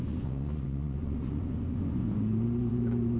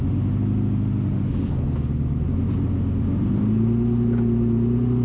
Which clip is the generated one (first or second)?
first